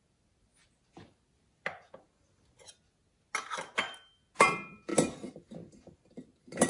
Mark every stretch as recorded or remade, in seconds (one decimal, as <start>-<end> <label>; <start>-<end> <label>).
0.0-6.7 recorded